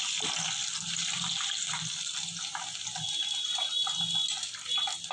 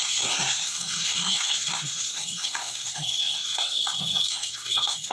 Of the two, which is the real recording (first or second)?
first